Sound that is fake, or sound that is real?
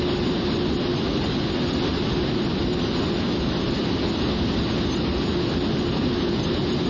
real